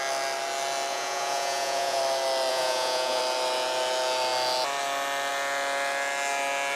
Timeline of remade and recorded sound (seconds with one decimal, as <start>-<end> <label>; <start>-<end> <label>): 0.0-0.9 recorded; 0.9-2.0 remade; 2.0-2.5 recorded; 2.5-3.2 remade; 3.2-6.8 recorded